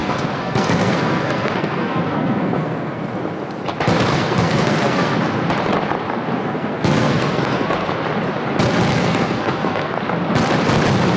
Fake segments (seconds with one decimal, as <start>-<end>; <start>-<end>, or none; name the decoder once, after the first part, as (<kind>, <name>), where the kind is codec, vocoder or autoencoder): 0.0-3.2 (codec, SNAC); 4.1-5.2; 6.4-7.9; 8.9-10.0